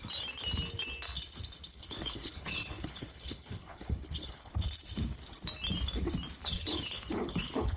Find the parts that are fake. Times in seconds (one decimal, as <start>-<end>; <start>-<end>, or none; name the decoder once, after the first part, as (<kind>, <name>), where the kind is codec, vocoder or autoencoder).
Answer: 1.7-4.5 (codec, HILCodec); 6.4-7.8